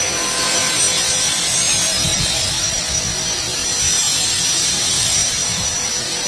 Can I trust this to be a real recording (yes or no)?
yes